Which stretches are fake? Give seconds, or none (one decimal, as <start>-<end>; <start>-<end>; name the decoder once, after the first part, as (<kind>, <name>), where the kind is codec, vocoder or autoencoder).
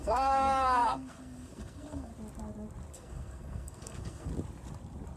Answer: 0.0-2.1 (codec, SNAC); 2.9-4.3